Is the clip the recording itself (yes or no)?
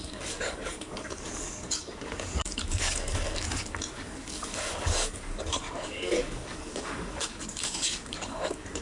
no